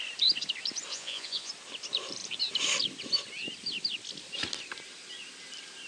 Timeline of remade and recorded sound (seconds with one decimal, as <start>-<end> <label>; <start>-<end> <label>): 0.0-0.9 recorded; 0.9-1.5 remade; 1.5-5.9 recorded

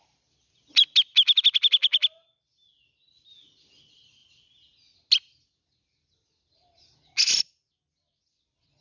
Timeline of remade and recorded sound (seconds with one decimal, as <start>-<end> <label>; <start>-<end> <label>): 0.0-8.8 recorded